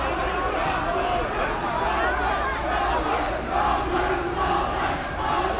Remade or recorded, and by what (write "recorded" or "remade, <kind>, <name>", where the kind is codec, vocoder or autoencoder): recorded